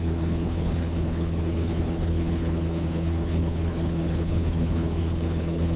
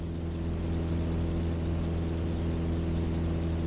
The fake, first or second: first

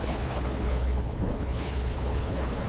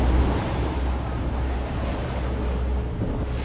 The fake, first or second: first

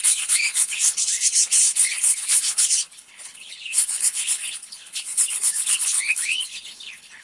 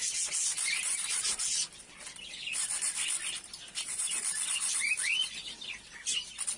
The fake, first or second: first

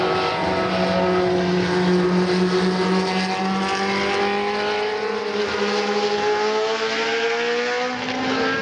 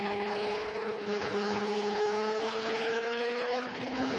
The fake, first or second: second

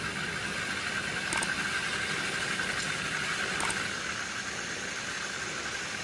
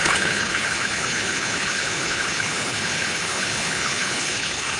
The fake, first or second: second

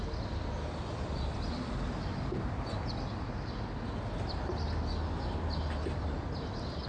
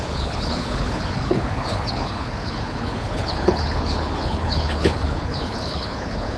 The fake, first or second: second